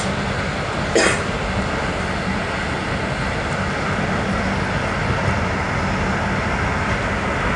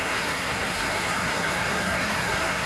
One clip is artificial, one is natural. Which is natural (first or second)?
first